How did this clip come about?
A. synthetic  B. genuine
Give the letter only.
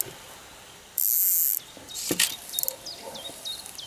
B